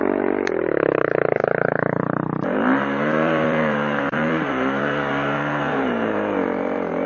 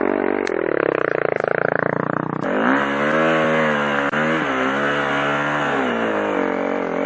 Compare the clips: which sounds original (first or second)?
second